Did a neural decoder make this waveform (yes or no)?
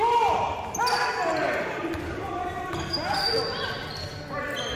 no